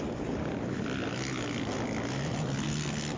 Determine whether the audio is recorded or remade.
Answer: recorded